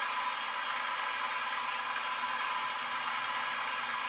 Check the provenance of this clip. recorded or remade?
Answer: recorded